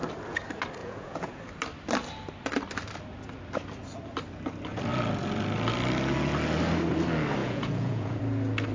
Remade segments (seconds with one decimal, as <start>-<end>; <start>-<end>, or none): 0.8-1.4; 7.4-8.2